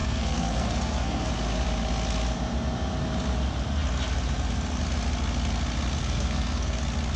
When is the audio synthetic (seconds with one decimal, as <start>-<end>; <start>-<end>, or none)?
0.0-1.3; 6.0-6.8